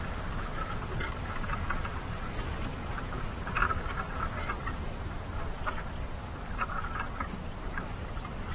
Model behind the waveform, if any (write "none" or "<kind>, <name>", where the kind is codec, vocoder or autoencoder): vocoder, BigVGAN v2